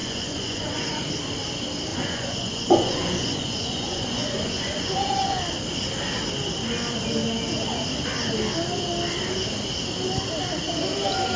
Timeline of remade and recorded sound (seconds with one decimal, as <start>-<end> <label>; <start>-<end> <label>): 0.0-1.1 remade; 1.1-1.9 recorded; 1.9-5.4 remade; 5.4-11.4 recorded